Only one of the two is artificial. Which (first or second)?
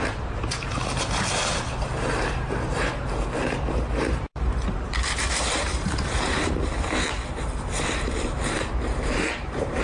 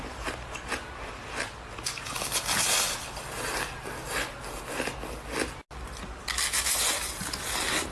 first